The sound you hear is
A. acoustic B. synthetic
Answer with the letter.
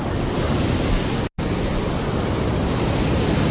A